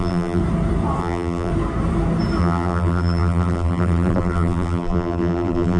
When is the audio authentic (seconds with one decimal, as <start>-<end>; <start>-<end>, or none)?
0.4-1.0; 1.5-2.4